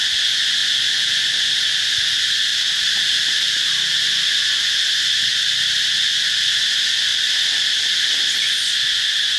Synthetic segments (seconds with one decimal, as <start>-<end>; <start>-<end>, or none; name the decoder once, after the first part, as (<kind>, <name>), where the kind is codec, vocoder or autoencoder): 0.0-2.5 (vocoder, Vocos); 4.0-5.3; 5.8-7.1; 8.4-9.4